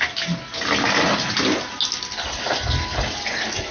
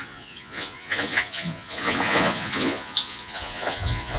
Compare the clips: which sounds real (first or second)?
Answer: first